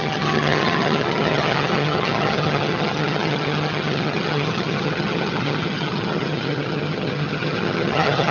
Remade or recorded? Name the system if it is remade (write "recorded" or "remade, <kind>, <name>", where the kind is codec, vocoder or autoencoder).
remade, vocoder, HiFi-GAN